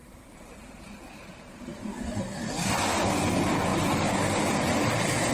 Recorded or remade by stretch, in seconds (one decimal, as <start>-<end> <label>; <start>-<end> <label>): 0.0-2.8 remade; 2.8-5.3 recorded